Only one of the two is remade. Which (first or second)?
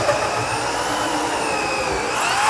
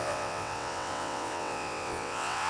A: second